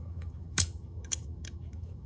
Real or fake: fake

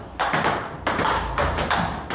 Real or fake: real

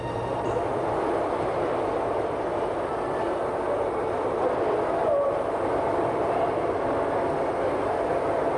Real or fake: real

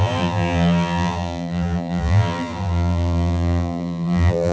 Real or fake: fake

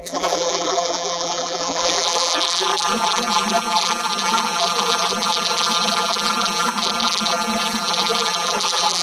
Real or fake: fake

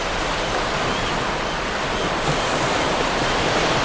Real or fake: real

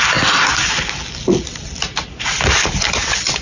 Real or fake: real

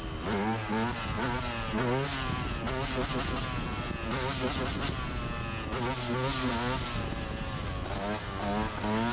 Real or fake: real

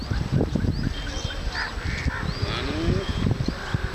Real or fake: real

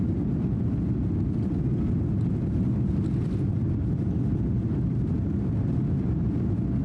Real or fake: real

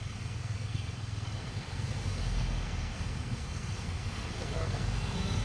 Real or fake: fake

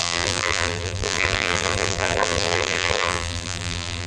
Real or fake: fake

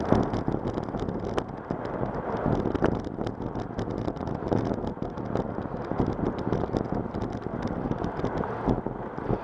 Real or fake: real